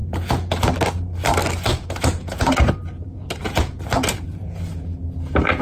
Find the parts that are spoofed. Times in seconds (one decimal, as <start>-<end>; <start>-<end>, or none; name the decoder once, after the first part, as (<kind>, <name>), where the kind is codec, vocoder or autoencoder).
0.0-0.6 (vocoder, Vocos); 1.7-4.8